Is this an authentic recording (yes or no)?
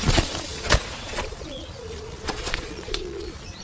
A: no